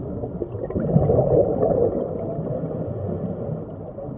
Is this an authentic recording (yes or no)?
yes